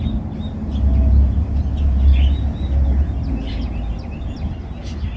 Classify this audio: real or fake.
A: real